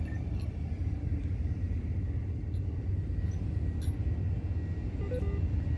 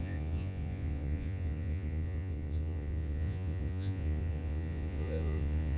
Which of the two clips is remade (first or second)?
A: second